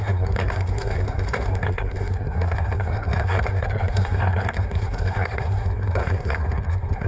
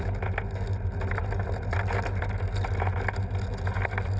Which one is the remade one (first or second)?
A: first